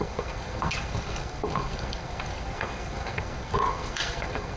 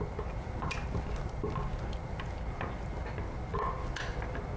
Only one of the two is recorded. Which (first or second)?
second